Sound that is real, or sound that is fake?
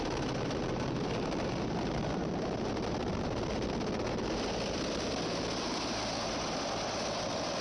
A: real